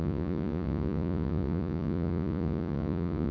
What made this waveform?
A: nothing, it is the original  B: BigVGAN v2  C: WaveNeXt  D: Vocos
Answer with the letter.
D